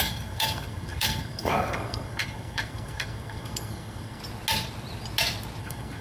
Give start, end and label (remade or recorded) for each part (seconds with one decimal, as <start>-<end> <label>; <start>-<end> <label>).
0.0-4.2 remade; 4.2-5.6 recorded; 5.6-6.0 remade